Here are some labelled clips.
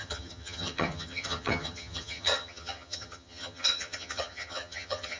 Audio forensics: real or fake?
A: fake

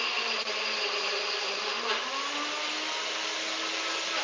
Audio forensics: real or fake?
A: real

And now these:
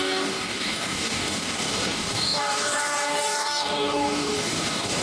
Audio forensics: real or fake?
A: fake